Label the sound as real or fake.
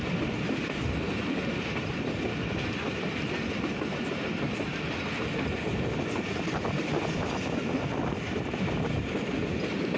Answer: real